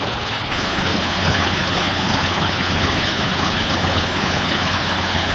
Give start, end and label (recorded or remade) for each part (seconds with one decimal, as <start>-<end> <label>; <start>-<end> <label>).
0.0-5.3 remade